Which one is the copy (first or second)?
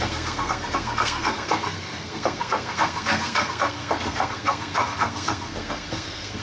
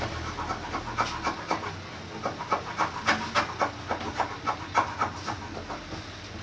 first